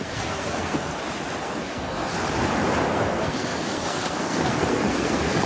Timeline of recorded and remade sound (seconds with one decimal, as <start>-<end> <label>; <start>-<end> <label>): 0.0-0.9 remade; 0.9-1.4 recorded; 1.4-2.1 remade; 2.1-2.9 recorded; 2.9-5.5 remade